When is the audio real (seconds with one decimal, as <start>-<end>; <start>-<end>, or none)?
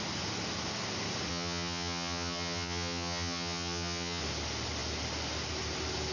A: 0.0-1.3; 4.2-6.1